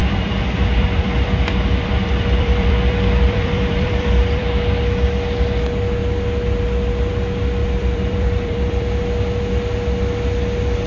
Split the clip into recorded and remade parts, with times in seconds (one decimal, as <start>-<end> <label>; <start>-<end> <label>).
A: 0.0-4.5 remade; 4.5-7.6 recorded; 7.6-9.0 remade; 9.0-10.9 recorded